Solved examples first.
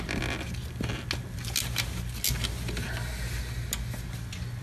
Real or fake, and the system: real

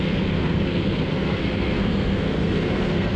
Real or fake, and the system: fake, codec, SNAC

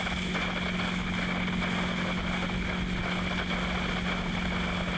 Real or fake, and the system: real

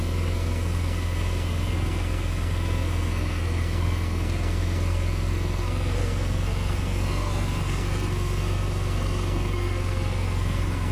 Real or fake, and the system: fake, codec, SNAC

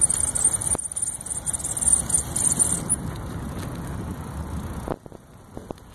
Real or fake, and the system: real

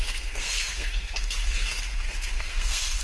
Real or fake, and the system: fake, codec, SNAC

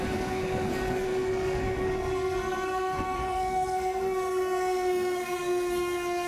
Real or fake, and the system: fake, codec, SNAC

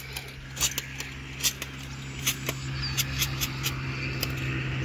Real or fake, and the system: real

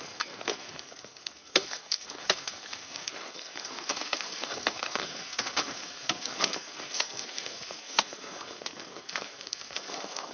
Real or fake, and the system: fake, codec, SNAC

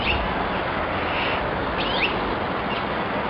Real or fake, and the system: real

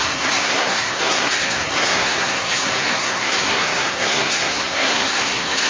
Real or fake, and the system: fake, codec, SNAC